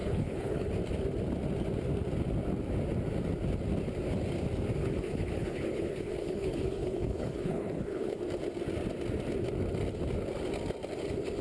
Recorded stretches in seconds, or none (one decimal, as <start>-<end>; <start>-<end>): 0.7-4.8; 8.2-11.4